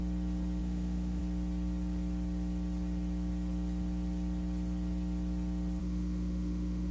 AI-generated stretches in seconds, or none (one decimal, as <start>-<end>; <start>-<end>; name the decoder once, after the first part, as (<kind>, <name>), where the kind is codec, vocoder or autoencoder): 0.6-1.2 (autoencoder, DAC-VAE); 5.8-6.9